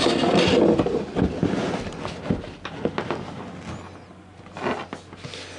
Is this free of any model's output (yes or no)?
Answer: yes